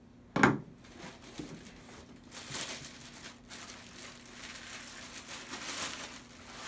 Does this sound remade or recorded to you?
recorded